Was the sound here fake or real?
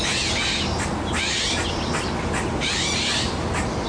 real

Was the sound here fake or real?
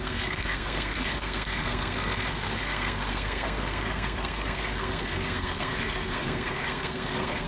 fake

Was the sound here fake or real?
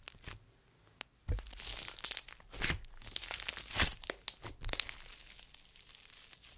real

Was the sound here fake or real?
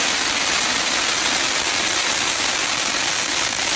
real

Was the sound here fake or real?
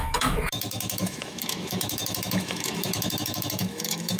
fake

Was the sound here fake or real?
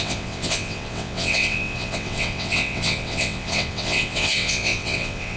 fake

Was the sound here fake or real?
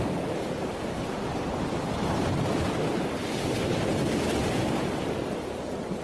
real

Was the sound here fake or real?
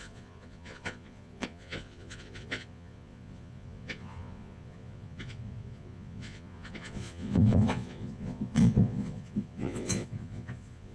fake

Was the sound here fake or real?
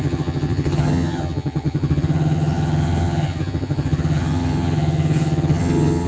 fake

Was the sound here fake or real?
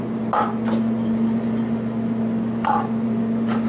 real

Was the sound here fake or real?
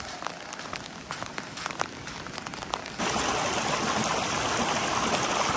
fake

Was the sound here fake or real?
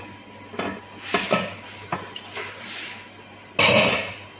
real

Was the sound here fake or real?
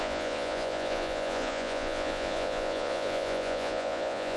fake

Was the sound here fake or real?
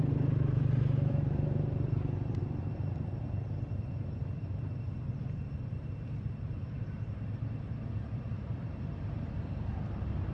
fake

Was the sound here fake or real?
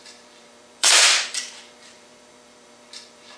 fake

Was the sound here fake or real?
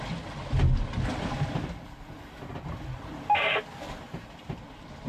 real